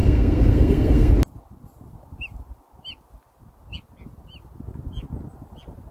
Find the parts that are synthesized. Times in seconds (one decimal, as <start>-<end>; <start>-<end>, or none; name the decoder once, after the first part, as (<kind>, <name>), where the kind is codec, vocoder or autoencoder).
0.0-1.1 (codec, SNAC)